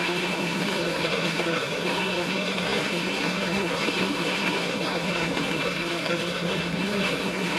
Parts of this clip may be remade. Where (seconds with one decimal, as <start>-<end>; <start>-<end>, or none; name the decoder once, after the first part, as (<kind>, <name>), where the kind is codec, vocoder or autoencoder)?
0.0-7.6 (codec, SNAC)